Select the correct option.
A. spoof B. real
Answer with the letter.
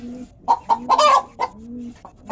B